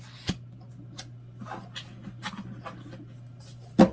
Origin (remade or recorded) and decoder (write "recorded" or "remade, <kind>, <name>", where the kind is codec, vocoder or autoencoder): recorded